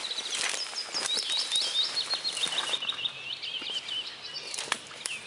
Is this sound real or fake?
real